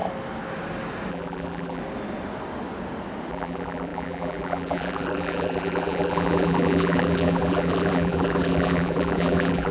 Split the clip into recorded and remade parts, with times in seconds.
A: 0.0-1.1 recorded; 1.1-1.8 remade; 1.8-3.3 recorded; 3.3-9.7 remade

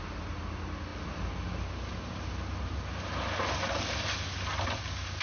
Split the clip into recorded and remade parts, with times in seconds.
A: 0.0-5.2 recorded

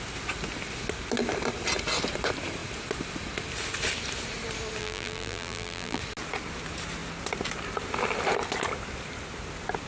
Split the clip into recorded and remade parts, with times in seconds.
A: 0.0-4.8 recorded; 4.8-6.0 remade; 6.0-9.9 recorded

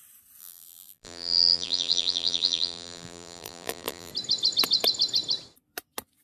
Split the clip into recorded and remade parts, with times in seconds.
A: 0.0-0.4 recorded; 0.4-4.1 remade; 4.1-6.2 recorded